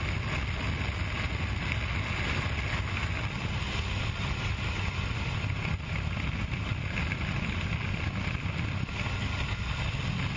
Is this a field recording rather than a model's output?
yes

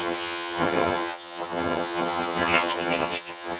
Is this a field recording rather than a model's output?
no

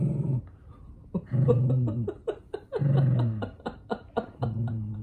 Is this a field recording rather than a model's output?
no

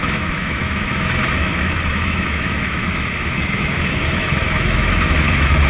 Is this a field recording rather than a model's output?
no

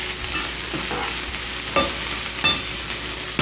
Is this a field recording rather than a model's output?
yes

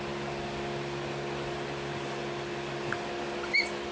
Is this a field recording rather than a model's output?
yes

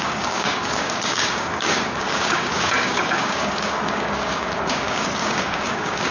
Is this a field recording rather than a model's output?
no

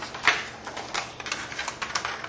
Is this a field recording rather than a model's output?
yes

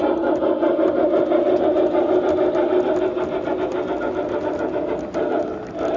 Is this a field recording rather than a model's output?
yes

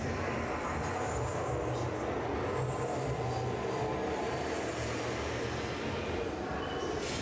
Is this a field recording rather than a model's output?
yes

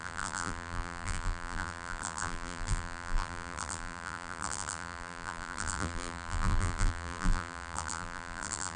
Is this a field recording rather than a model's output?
no